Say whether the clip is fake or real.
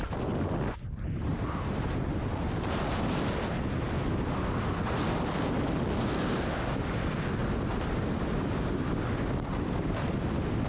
real